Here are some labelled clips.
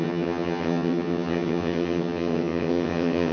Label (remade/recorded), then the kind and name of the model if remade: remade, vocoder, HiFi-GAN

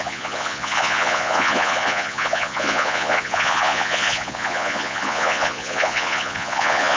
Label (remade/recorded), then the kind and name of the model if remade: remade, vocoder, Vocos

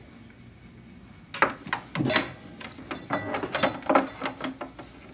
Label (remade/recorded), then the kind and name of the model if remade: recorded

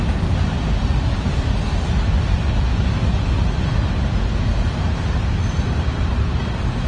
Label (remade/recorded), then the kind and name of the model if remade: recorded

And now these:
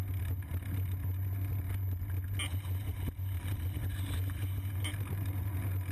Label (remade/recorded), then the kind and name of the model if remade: recorded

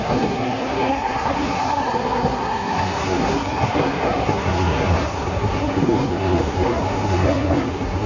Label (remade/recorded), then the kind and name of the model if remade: remade, codec, SNAC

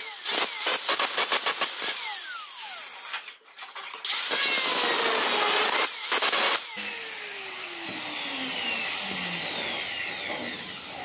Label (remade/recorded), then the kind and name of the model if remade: recorded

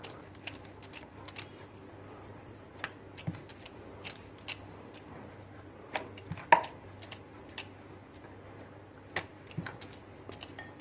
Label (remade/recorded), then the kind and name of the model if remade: recorded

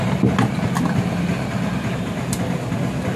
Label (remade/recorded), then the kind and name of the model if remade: recorded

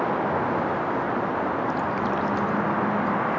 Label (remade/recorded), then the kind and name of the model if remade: recorded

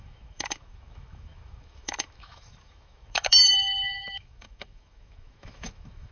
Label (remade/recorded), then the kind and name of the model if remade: remade, autoencoder, DAC-VAE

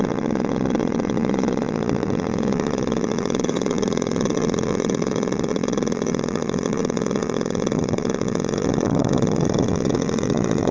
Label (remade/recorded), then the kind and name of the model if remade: remade, vocoder, Vocos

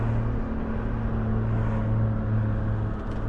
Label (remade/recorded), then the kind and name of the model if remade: recorded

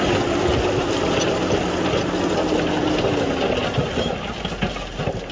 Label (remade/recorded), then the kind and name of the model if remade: recorded